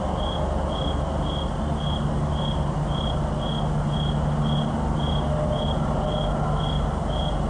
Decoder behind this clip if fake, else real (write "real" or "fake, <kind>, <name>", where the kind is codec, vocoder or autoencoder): real